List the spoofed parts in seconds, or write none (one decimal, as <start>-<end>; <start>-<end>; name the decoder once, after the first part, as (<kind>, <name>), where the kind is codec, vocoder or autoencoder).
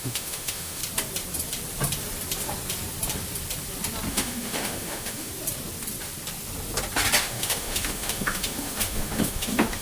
0.0-0.8 (autoencoder, DAC-VAE); 4.1-5.3; 7.2-9.8